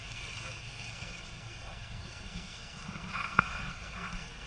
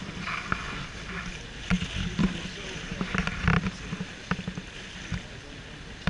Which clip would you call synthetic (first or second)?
first